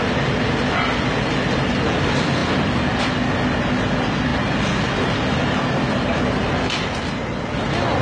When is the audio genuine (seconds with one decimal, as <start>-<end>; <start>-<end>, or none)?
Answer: 0.0-8.0

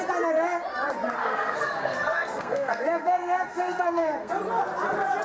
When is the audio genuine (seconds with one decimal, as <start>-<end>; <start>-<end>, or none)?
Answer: 0.0-1.2; 4.3-5.2

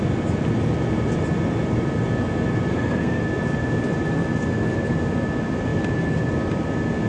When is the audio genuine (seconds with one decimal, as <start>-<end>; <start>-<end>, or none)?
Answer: 0.0-2.7; 3.2-7.1

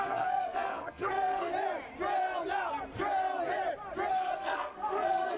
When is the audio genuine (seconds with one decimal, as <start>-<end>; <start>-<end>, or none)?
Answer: 1.5-4.1

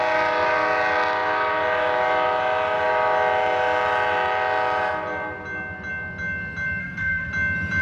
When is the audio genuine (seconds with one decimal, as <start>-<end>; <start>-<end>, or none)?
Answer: 0.0-6.8; 7.3-7.8